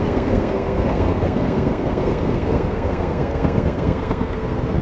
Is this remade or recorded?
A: remade